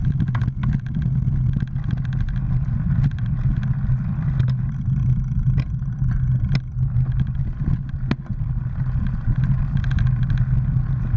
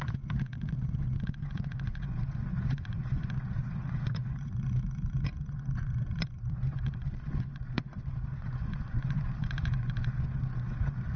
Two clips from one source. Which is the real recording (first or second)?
first